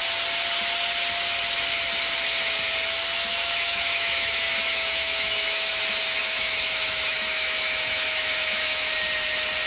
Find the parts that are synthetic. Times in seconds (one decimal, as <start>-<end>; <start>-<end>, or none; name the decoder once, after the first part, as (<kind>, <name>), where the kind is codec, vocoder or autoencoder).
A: 3.3-5.8 (autoencoder, DAC-VAE); 6.2-8.9